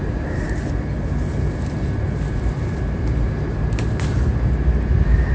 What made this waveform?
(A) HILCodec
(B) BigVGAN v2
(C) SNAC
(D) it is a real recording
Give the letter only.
B